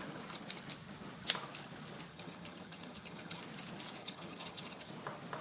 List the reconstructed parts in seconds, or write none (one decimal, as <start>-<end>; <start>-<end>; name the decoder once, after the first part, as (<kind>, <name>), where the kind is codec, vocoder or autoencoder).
2.1-3.4 (vocoder, HiFi-GAN); 4.0-4.9